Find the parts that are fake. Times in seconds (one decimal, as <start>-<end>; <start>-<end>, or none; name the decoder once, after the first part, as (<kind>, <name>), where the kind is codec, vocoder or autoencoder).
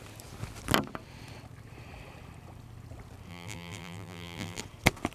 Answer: 3.3-4.6 (vocoder, BigVGAN v2)